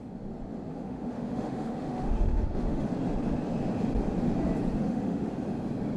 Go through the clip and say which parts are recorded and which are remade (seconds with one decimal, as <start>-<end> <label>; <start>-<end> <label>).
0.0-0.7 recorded; 0.7-2.9 remade; 2.9-4.8 recorded; 4.8-5.3 remade; 5.3-6.0 recorded